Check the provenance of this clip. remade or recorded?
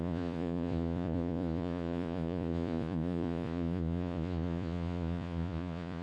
remade